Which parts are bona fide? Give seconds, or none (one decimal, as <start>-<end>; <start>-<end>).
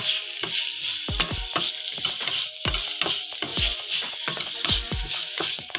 0.0-3.5